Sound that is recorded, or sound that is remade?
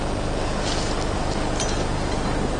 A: recorded